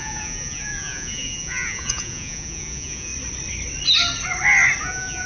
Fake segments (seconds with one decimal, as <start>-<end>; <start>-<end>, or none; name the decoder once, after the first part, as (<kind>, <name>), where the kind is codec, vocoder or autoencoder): 0.0-3.1 (vocoder, Vocos); 4.8-5.3